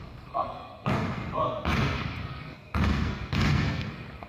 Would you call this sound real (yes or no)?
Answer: no